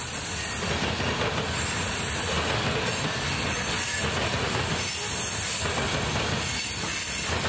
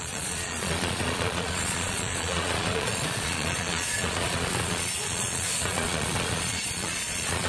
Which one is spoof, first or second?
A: second